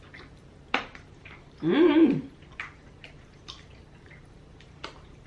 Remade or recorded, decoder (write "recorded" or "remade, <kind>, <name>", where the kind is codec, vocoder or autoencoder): remade, vocoder, BigVGAN v2